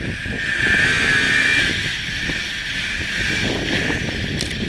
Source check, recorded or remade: recorded